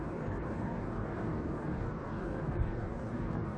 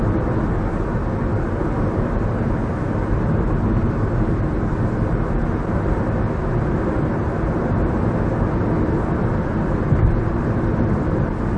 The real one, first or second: second